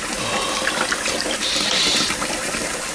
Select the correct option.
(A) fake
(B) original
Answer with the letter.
B